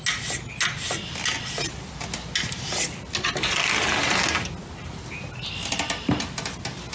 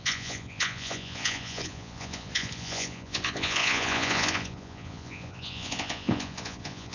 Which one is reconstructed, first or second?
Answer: second